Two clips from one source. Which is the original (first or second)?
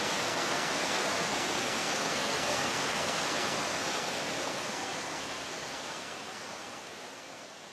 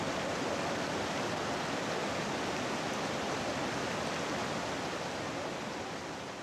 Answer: second